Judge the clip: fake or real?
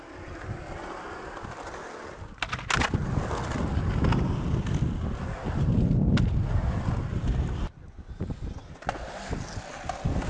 real